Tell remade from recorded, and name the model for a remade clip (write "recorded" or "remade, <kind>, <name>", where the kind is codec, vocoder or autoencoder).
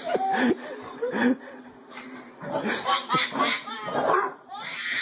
remade, vocoder, BigVGAN v2